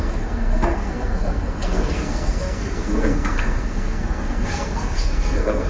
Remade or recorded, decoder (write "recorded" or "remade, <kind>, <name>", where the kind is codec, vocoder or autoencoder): remade, codec, SNAC